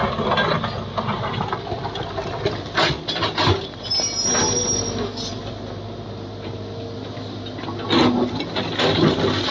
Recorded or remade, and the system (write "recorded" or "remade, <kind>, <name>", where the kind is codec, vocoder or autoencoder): recorded